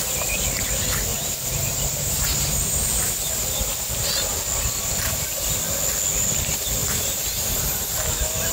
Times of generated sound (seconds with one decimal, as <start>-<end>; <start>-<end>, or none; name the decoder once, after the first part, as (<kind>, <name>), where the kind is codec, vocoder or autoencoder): 1.1-2.8 (vocoder, BigVGAN v2); 6.8-7.9